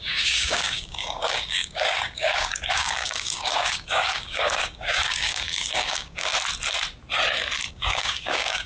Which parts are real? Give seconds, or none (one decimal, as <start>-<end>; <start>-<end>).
6.3-7.7